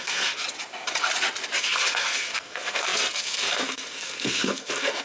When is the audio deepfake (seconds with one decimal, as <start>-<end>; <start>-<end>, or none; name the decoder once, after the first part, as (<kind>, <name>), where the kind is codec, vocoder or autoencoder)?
0.0-0.4 (codec, SNAC); 1.6-5.0